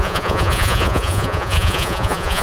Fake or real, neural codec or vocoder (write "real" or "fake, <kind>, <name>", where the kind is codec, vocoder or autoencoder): fake, vocoder, Vocos